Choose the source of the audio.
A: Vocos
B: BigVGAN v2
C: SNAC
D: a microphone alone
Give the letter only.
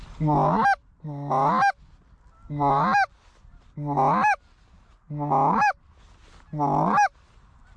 D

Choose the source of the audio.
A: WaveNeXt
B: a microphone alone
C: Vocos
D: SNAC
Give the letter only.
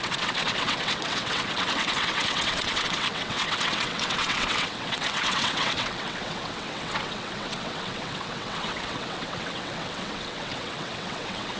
A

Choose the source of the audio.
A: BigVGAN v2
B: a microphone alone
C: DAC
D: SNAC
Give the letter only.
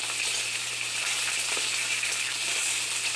A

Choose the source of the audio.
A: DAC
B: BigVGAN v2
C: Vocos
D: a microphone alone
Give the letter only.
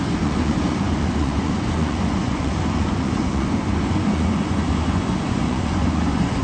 C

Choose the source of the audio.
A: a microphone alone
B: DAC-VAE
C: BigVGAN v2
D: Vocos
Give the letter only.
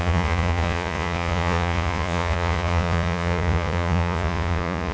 D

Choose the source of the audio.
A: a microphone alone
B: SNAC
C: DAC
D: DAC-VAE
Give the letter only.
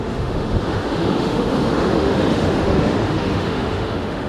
D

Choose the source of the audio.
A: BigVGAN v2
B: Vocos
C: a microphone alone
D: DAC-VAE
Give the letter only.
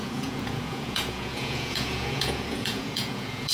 B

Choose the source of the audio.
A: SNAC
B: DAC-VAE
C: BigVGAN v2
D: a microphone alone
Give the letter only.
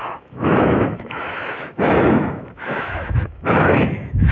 B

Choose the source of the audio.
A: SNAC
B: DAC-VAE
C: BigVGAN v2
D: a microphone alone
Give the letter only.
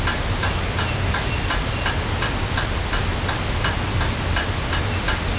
D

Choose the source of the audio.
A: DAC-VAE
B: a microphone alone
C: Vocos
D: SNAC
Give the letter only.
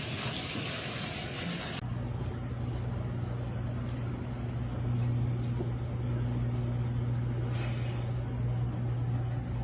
B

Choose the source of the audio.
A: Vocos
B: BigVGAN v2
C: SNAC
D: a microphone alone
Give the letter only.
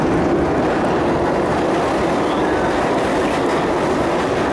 D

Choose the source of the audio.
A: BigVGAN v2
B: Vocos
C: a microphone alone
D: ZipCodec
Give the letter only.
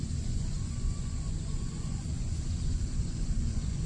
B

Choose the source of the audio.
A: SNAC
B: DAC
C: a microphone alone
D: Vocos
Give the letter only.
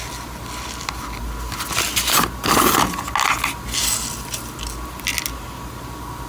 C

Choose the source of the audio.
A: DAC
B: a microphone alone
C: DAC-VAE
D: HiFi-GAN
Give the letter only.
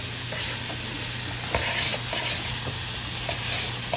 B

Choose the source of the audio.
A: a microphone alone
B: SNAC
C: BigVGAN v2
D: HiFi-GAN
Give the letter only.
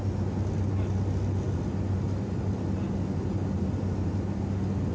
A